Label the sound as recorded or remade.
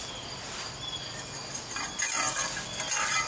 recorded